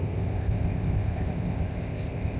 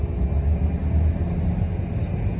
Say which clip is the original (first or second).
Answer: second